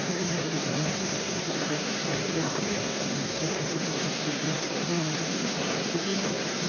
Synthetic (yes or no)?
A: yes